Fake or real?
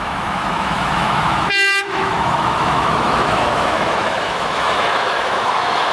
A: fake